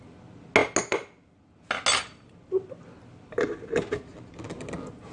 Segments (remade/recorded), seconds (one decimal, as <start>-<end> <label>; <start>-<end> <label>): 0.0-5.1 recorded